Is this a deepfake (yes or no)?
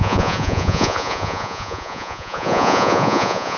yes